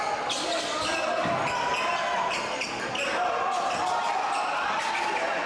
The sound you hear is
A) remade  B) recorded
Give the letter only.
B